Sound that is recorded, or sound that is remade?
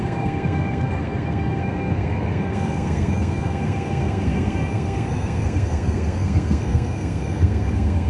remade